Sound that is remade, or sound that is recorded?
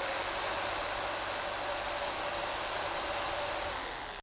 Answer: recorded